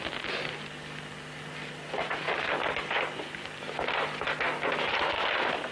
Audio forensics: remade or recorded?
recorded